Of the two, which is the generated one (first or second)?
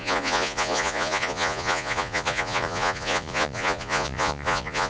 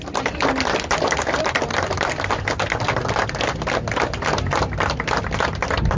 first